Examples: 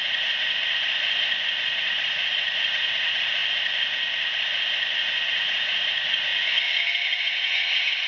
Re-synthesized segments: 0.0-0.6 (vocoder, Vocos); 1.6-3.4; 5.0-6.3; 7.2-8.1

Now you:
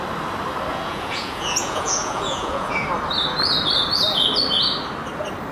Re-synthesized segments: 0.7-2.7 (vocoder, Vocos)

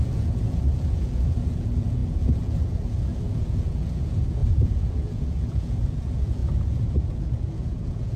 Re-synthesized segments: 0.0-8.2 (vocoder, Vocos)

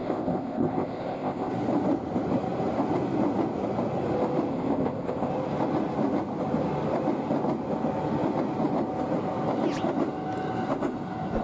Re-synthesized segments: 0.0-1.5 (codec, ZipCodec); 4.5-5.3

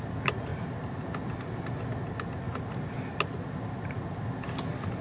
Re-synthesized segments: none